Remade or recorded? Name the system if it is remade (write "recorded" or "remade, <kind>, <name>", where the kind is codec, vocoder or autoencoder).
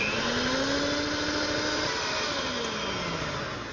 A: recorded